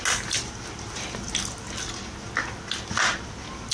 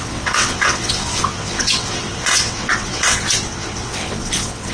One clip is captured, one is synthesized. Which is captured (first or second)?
first